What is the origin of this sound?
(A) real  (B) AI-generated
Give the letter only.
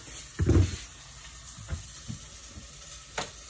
A